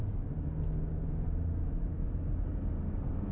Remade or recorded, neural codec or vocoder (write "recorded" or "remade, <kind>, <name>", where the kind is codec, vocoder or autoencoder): recorded